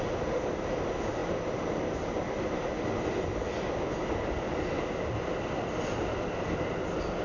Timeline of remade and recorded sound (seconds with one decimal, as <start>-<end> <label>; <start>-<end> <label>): 0.0-7.2 recorded